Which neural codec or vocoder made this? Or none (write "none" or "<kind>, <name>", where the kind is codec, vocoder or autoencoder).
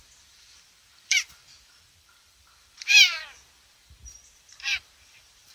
vocoder, BigVGAN v2